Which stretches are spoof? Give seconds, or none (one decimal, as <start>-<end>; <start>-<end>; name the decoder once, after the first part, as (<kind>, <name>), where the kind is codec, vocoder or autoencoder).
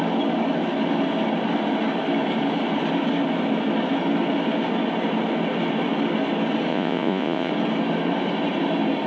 6.7-7.5 (vocoder, Vocos)